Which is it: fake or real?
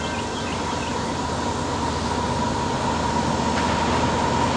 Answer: real